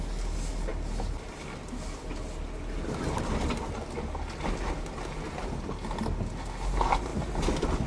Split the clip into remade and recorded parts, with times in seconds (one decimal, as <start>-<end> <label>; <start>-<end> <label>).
0.0-7.9 recorded